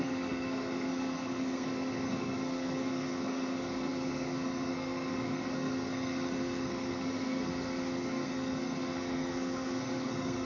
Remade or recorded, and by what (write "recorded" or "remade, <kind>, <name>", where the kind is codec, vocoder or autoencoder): remade, codec, SNAC